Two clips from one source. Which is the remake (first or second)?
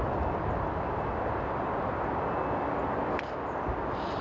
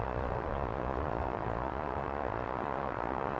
second